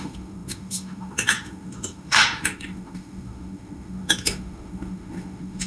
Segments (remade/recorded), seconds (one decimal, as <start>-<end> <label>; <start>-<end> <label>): 0.0-5.7 remade